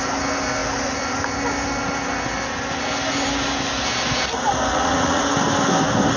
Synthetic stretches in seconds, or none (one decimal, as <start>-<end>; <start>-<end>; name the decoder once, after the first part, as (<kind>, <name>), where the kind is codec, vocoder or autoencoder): 4.7-5.2 (vocoder, Vocos)